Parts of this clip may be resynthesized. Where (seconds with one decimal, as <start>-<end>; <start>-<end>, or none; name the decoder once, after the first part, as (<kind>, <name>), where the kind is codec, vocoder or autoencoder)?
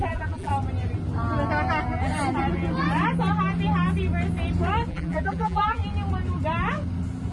0.0-0.5 (vocoder, BigVGAN v2); 4.9-5.8